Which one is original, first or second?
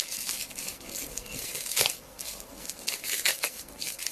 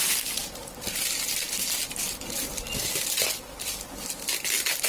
second